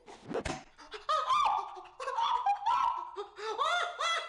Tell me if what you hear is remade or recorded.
recorded